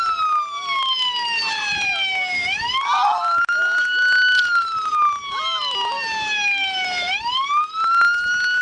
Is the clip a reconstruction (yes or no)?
no